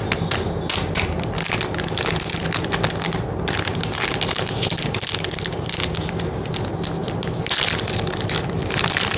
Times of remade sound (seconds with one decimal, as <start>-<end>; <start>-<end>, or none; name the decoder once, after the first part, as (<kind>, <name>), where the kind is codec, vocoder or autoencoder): none